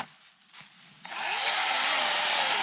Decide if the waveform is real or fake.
real